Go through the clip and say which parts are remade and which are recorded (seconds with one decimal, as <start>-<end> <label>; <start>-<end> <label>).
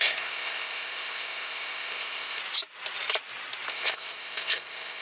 0.0-2.4 remade; 2.4-3.7 recorded; 3.7-5.0 remade